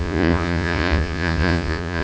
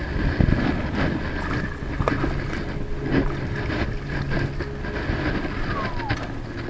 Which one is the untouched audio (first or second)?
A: second